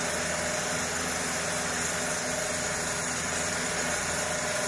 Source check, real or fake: real